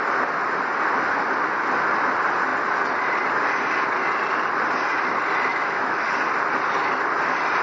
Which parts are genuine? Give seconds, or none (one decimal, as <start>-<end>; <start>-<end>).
0.0-5.5; 6.1-7.6